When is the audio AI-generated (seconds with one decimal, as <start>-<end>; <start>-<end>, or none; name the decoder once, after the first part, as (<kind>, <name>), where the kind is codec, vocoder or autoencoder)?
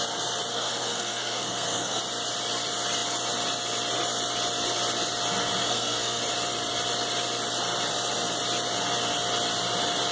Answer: 0.5-2.0 (codec, SNAC); 5.6-6.2